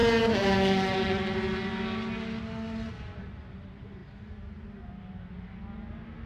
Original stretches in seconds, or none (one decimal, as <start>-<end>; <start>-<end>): 0.0-6.3